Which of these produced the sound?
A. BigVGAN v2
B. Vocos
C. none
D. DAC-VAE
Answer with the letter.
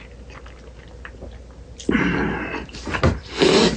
C